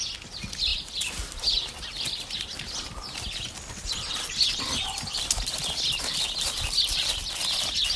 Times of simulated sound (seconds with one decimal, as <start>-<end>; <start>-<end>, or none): 0.7-4.1; 4.5-5.3